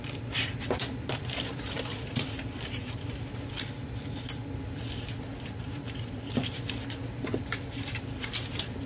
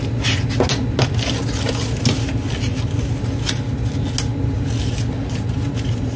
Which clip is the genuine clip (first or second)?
second